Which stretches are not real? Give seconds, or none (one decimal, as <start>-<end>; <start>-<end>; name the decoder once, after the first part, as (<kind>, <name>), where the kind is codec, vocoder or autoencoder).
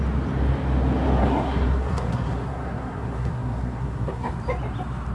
1.2-4.3 (codec, SNAC)